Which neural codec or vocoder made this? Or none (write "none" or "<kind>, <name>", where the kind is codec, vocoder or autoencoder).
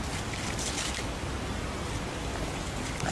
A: none